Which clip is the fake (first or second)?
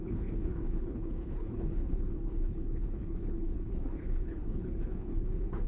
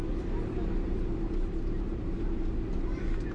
first